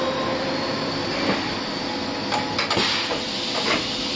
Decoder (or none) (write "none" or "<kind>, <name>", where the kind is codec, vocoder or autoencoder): none